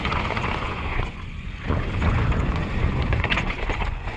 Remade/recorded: remade